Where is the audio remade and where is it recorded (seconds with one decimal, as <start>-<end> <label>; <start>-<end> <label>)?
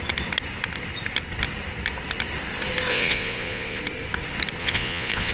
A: 0.0-2.9 recorded; 2.9-3.8 remade; 3.8-4.6 recorded; 4.6-5.3 remade